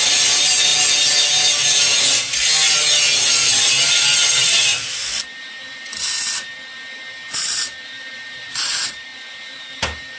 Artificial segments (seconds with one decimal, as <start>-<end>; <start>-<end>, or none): 0.0-0.7; 3.9-4.7; 5.4-6.5; 7.4-10.2